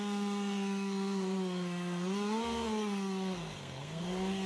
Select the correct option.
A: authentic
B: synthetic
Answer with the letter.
B